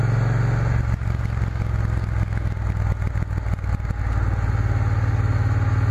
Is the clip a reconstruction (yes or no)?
no